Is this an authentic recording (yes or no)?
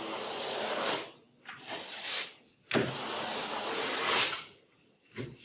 yes